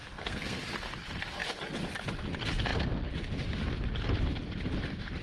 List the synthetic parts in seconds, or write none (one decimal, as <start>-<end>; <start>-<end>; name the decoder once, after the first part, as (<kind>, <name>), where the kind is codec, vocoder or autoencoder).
0.0-0.6 (codec, SNAC)